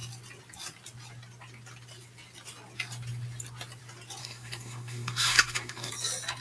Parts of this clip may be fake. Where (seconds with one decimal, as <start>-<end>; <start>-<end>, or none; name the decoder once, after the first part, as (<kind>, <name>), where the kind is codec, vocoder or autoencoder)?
4.2-5.9 (codec, SNAC)